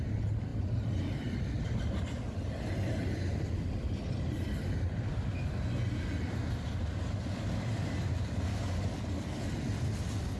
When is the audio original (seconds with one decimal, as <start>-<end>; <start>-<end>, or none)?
0.0-10.4

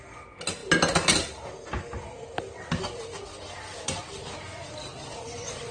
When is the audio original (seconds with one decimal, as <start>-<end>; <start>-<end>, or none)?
0.0-5.7

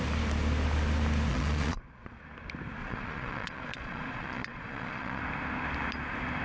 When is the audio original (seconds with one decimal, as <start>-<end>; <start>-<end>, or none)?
0.0-1.3; 2.2-2.8; 5.2-6.4

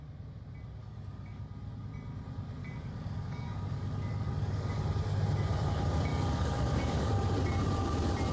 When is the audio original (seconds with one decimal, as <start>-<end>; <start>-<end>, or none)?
0.0-0.8; 1.4-2.6; 4.8-6.1; 7.1-8.3